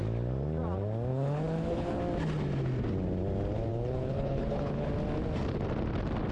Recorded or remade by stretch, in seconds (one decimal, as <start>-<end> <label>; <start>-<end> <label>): 0.0-1.1 recorded; 1.1-2.0 remade; 2.0-3.7 recorded; 3.7-4.9 remade; 4.9-6.3 recorded